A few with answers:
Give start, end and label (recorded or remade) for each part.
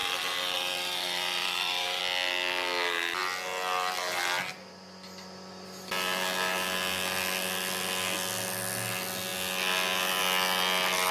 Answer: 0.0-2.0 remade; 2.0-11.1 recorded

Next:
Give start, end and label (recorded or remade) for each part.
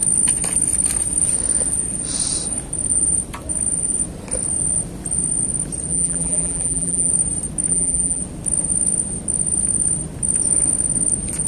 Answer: 0.0-5.9 recorded; 5.9-7.1 remade; 7.1-7.7 recorded; 7.7-8.2 remade; 8.2-11.5 recorded